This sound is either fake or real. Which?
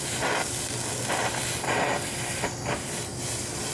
real